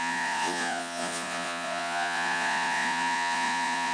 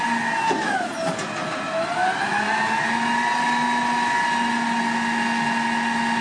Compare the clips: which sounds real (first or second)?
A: second